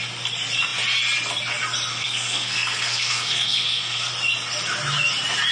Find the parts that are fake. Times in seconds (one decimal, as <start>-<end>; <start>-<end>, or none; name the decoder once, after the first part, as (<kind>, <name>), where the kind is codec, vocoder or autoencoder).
1.9-4.1 (codec, SNAC)